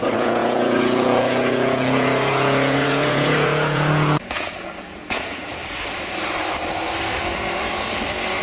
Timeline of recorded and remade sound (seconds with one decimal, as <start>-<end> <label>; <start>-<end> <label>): 0.0-5.6 remade; 5.6-8.4 recorded